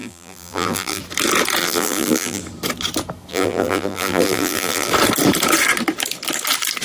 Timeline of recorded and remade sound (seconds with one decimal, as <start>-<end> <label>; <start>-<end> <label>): 0.0-1.0 remade; 1.0-1.6 recorded; 1.6-2.4 remade; 2.4-3.3 recorded; 3.3-4.9 remade; 4.9-6.8 recorded